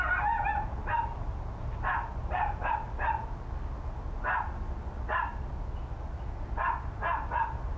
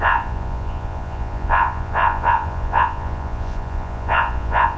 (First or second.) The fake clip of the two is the second